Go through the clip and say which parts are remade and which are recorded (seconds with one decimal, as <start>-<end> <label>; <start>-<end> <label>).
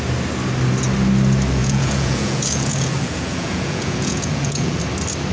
0.0-1.6 recorded; 1.6-4.8 remade; 4.8-5.3 recorded